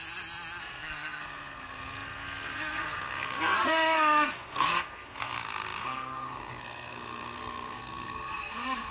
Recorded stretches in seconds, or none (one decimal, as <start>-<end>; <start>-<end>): 0.0-0.6